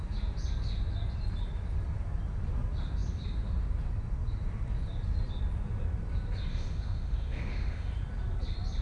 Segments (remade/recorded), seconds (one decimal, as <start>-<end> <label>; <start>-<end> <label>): 0.0-6.5 recorded; 6.5-7.9 remade; 7.9-8.8 recorded